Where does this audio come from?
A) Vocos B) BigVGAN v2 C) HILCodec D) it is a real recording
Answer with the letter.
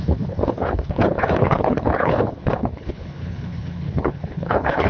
C